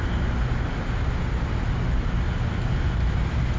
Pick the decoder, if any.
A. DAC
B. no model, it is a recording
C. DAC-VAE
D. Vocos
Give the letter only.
B